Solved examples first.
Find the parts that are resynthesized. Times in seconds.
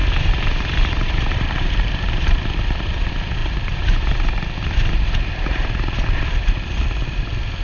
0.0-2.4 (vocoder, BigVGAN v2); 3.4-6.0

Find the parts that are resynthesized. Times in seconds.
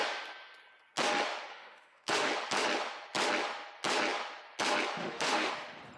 1.5-2.3 (autoencoder, DAC-VAE); 5.0-5.5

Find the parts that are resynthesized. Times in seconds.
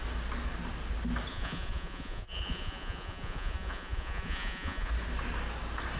1.3-4.9 (vocoder, Vocos)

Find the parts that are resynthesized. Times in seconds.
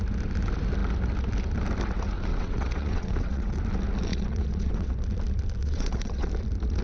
2.3-3.6 (vocoder, WaveNeXt); 4.1-4.9; 5.6-6.3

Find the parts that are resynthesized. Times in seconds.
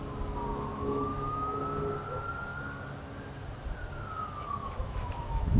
0.7-1.6 (autoencoder, DAC-VAE); 4.6-5.6